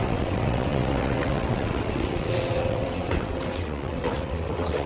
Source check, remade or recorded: remade